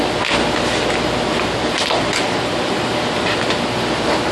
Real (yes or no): yes